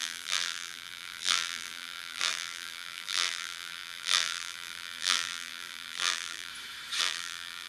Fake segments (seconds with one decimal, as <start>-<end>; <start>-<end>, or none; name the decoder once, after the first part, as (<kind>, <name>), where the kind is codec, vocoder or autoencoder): 0.0-6.5 (vocoder, BigVGAN v2); 7.0-7.7